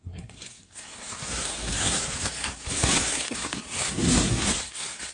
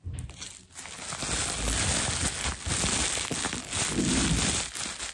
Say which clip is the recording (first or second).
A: second